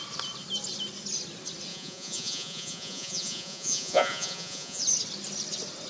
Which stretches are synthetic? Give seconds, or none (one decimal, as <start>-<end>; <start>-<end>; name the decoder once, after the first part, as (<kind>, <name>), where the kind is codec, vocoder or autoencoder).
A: 1.7-4.8 (vocoder, Vocos)